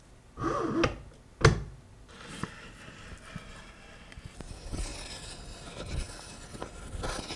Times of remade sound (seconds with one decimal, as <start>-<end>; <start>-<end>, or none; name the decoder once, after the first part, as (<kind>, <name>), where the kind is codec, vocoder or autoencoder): none